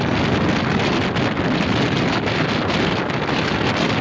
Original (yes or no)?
yes